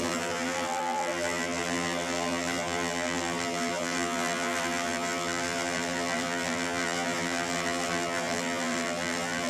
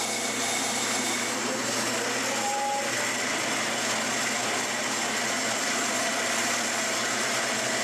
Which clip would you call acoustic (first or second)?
second